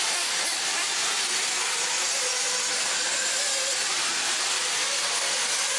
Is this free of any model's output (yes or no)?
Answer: yes